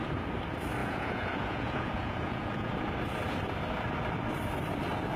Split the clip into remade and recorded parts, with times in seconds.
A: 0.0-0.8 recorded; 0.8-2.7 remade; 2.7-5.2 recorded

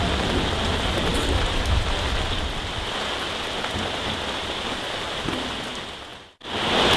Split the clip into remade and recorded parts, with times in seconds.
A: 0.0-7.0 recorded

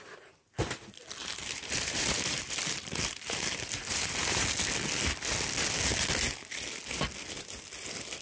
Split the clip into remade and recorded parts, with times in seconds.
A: 0.0-1.2 recorded; 1.2-4.7 remade; 4.7-8.2 recorded